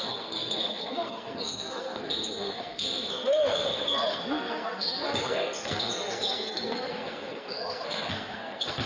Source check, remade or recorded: remade